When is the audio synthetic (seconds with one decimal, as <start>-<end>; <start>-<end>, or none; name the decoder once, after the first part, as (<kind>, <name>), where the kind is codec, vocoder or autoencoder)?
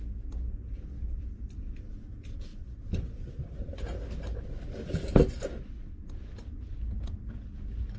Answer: none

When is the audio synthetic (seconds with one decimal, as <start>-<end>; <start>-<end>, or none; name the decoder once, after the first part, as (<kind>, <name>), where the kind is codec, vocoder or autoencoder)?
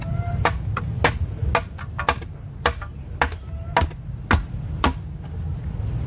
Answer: none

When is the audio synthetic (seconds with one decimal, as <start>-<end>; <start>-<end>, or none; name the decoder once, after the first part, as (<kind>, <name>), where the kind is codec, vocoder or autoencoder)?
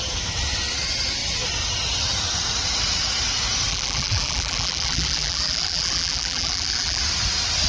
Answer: 3.7-7.0 (vocoder, BigVGAN v2)